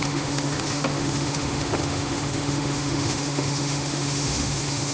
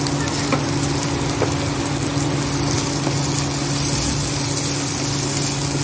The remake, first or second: first